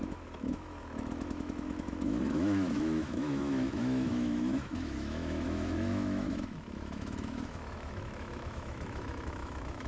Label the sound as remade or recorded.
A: remade